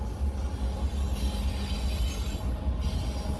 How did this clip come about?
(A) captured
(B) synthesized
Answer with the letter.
A